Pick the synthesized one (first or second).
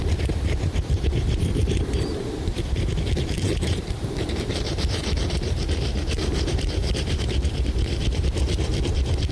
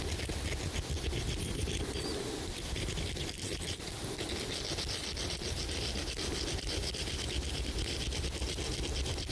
first